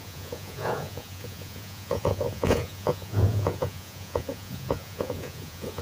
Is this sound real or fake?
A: fake